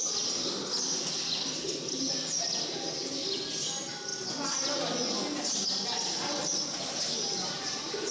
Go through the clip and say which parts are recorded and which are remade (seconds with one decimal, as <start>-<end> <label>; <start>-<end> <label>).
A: 0.0-8.1 recorded